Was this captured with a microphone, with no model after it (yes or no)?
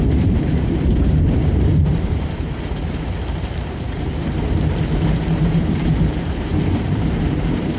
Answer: no